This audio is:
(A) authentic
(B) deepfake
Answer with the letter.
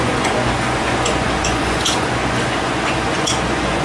B